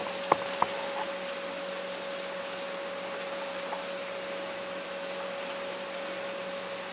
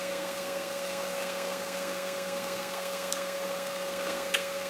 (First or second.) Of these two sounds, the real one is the first